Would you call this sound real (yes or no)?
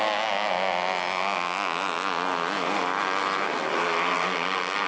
yes